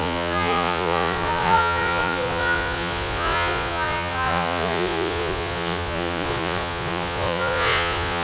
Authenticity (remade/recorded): remade